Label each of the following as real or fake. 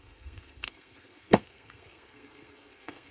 fake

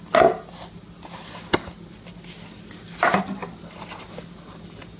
real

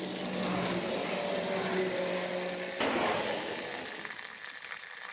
real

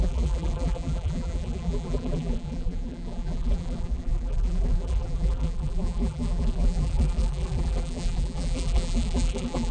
fake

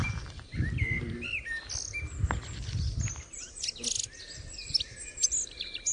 real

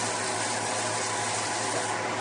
real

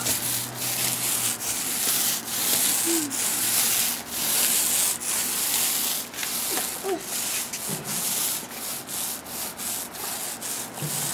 real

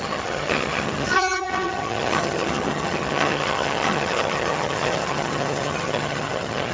fake